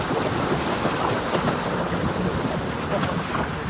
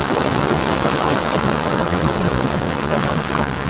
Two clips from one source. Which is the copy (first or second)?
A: second